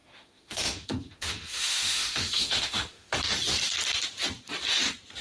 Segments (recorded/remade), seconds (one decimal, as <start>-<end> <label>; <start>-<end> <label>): 0.0-3.1 remade; 3.1-5.2 recorded